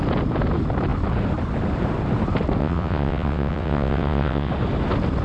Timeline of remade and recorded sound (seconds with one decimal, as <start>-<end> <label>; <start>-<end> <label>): 0.0-2.6 recorded; 2.6-4.5 remade; 4.5-5.2 recorded